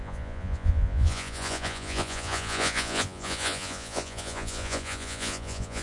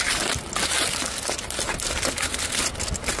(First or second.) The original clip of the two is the second